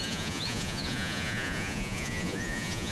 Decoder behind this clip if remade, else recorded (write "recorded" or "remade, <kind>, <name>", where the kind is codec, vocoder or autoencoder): remade, vocoder, Vocos